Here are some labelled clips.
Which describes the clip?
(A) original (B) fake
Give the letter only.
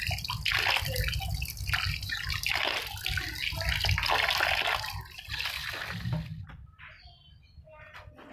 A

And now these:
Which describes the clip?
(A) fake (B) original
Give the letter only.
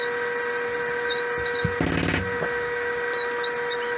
B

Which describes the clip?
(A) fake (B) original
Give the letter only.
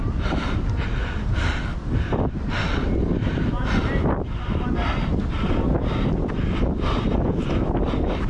B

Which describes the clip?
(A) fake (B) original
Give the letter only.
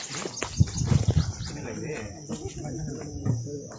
B